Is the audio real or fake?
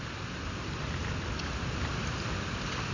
real